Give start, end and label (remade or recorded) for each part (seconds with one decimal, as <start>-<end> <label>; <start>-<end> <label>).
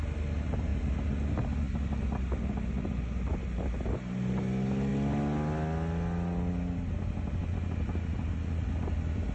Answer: 0.0-9.3 recorded